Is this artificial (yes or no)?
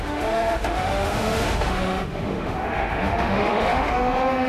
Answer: yes